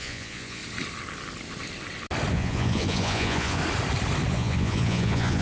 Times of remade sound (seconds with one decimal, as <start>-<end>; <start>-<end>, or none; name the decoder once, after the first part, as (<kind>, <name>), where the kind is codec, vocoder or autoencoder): 0.0-0.6 (vocoder, Vocos); 2.3-3.6; 4.3-5.4

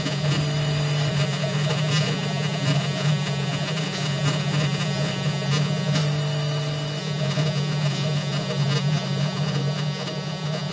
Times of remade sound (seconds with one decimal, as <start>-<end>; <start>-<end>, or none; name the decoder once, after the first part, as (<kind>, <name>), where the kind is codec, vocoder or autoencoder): 0.0-0.4 (vocoder, Vocos); 1.1-6.0; 7.0-10.7

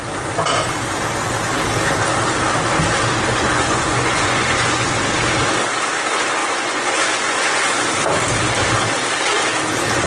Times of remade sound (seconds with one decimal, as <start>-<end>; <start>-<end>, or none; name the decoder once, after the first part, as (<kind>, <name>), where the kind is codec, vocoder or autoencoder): 3.3-4.9 (vocoder, Vocos); 6.4-7.9

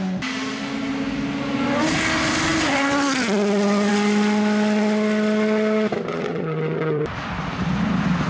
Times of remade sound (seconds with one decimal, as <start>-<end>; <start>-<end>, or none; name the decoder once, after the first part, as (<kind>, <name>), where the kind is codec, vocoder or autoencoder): 6.1-7.0 (vocoder, Vocos)

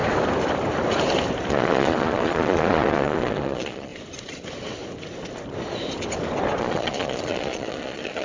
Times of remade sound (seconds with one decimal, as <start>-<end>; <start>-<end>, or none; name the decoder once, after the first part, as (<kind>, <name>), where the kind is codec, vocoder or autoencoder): 1.5-3.9 (vocoder, Vocos); 6.6-8.2

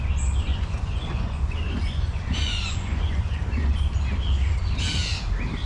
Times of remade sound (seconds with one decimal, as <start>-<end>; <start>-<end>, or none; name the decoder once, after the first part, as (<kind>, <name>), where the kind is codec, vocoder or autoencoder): 0.5-3.9 (vocoder, Vocos)

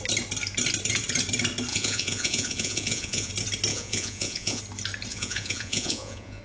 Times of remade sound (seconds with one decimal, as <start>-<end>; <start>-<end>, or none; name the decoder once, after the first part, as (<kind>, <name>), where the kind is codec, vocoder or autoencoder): 1.7-3.3 (vocoder, Vocos); 3.7-4.6; 5.1-6.4

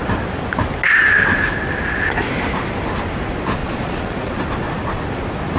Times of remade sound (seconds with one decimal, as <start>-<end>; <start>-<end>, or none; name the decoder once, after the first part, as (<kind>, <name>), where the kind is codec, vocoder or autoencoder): 3.6-4.4 (vocoder, Vocos)